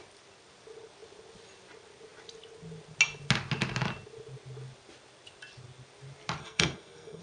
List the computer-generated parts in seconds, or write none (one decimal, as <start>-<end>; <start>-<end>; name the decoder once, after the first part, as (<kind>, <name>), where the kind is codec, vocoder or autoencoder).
6.4-7.2 (codec, SNAC)